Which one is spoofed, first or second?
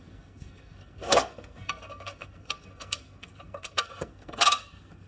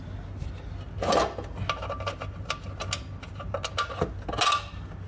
first